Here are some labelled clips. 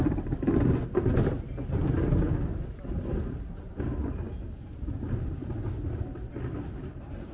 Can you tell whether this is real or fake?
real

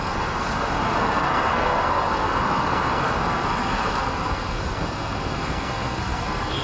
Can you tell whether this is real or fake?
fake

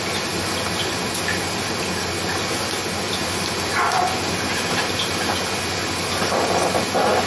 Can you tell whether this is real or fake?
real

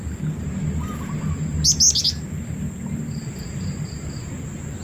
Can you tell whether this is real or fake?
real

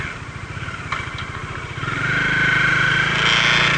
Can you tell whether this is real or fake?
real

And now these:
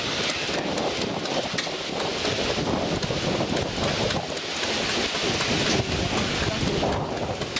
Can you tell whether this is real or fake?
real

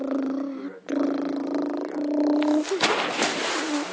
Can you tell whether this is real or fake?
real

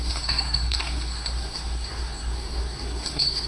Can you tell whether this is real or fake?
fake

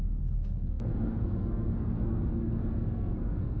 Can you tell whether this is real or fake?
fake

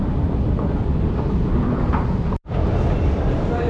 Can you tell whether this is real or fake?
real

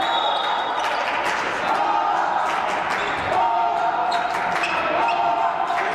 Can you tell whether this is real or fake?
real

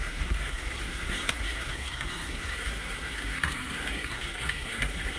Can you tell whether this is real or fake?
fake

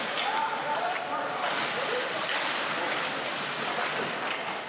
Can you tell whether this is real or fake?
real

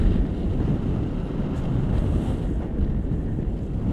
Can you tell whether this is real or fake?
real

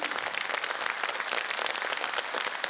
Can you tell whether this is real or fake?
real